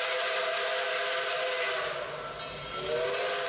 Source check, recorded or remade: recorded